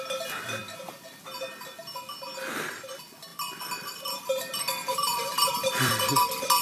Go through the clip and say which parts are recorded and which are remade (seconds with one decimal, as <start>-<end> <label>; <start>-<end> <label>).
0.0-3.3 recorded; 3.3-5.9 remade; 5.9-6.6 recorded